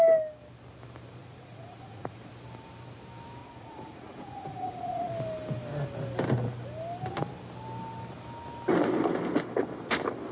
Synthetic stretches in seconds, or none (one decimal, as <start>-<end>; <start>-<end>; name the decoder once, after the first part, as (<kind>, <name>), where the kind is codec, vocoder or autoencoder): 1.2-2.3 (vocoder, Vocos); 3.4-5.1